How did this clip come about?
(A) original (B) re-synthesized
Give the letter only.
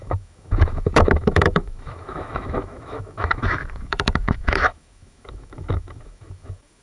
B